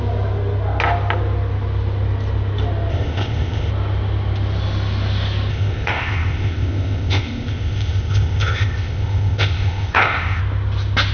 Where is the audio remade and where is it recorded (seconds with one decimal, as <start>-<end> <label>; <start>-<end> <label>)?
0.0-2.9 recorded; 2.9-3.7 remade; 3.7-5.5 recorded; 5.5-10.4 remade; 10.4-11.1 recorded